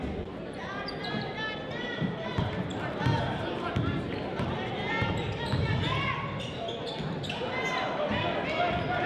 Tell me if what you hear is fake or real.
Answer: real